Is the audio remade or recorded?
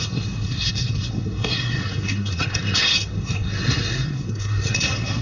remade